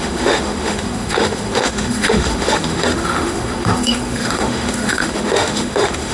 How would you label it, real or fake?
fake